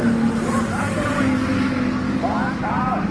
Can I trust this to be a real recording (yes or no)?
yes